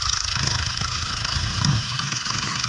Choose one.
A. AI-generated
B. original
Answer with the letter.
A